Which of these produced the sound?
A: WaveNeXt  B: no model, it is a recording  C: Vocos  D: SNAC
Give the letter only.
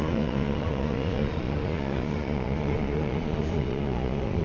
C